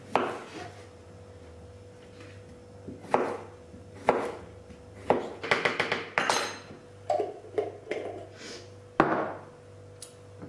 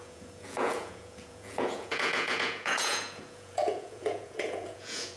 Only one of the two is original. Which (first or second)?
first